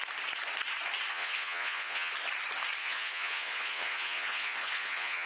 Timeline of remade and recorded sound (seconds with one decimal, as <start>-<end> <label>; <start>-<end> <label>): 0.0-1.1 recorded; 1.1-2.1 remade; 2.1-2.8 recorded; 2.8-5.3 remade